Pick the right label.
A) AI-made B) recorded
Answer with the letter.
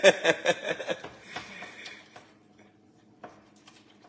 A